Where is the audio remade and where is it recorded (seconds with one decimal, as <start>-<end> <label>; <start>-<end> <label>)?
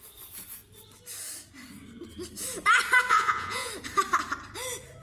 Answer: 0.0-3.1 recorded; 3.1-3.7 remade; 3.7-5.0 recorded